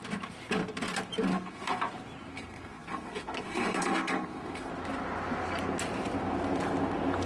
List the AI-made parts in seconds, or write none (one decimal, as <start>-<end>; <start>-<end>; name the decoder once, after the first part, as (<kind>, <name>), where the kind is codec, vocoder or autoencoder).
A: 1.3-1.8 (codec, SNAC); 2.3-4.7